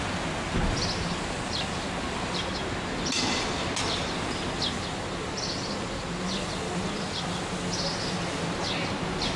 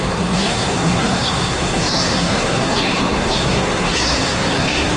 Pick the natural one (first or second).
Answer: first